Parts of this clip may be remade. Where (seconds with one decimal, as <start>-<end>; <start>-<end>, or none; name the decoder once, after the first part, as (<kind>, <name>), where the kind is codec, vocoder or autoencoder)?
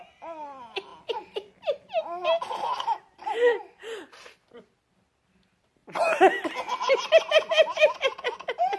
none